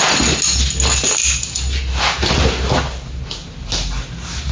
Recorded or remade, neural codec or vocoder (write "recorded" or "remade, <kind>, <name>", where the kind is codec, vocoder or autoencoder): recorded